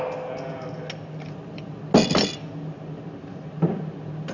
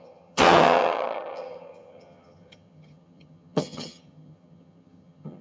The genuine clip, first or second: first